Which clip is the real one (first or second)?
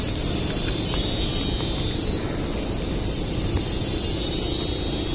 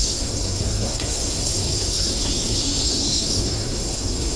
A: first